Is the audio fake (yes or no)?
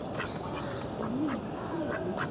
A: no